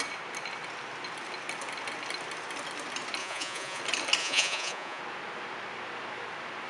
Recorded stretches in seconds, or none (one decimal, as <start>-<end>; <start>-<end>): 0.0-3.2; 3.8-4.2; 5.0-6.7